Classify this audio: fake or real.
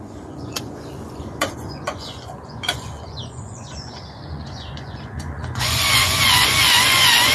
fake